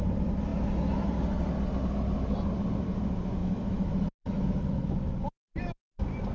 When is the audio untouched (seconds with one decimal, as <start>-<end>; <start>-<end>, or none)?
0.0-3.4; 5.1-6.3